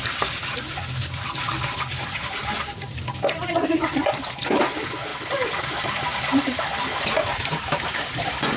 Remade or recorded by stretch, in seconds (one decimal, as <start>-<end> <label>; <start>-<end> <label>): 0.0-8.6 recorded